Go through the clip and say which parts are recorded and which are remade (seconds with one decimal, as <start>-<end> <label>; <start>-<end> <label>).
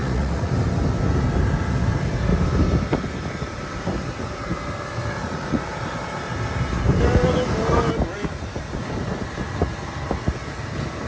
0.0-0.5 remade; 0.5-5.2 recorded; 5.2-5.7 remade; 5.7-11.1 recorded